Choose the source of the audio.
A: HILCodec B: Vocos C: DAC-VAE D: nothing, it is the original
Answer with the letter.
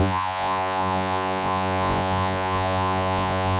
B